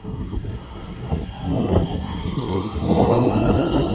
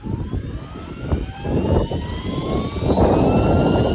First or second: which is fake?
first